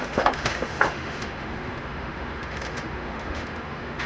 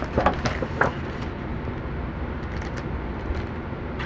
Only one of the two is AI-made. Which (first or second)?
first